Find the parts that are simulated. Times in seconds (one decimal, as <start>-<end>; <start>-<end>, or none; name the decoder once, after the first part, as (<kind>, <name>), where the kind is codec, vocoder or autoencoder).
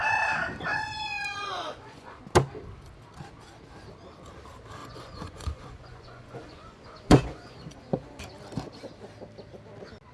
0.7-2.2 (vocoder, Vocos); 4.8-8.2